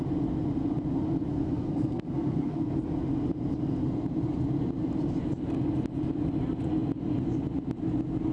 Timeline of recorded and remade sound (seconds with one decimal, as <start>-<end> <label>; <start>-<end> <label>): 0.0-1.3 recorded; 1.3-2.7 remade; 2.7-8.3 recorded